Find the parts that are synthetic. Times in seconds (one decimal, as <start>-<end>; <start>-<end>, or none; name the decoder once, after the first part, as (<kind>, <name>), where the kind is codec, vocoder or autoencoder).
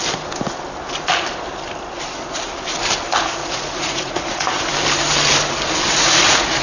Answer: 3.4-4.6 (vocoder, Vocos); 6.0-6.6